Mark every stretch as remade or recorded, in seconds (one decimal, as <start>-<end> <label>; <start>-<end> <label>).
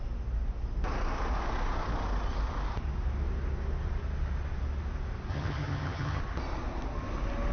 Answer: 0.0-5.3 recorded; 5.3-6.2 remade; 6.2-7.5 recorded